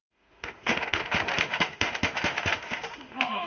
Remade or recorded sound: remade